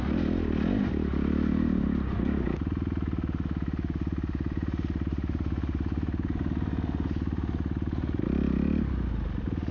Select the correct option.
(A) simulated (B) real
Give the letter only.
B